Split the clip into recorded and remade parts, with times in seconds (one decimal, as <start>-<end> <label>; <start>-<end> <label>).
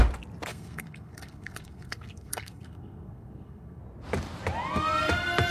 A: 0.0-0.5 recorded; 0.5-3.8 remade; 3.8-5.5 recorded